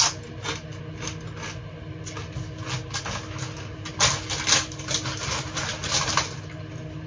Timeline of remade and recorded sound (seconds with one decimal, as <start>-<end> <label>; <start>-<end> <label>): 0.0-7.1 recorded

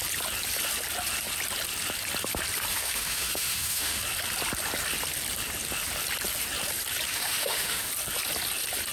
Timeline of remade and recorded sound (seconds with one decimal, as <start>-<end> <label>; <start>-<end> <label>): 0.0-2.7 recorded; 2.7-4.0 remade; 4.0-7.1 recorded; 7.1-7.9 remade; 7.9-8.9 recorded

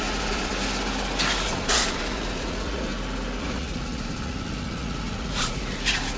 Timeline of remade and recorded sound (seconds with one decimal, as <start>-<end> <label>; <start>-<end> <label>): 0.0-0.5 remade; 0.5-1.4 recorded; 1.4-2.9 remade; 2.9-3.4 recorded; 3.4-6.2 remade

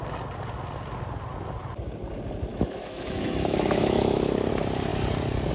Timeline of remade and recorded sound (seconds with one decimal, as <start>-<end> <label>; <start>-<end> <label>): 0.0-2.5 recorded; 2.5-4.5 remade; 4.5-5.5 recorded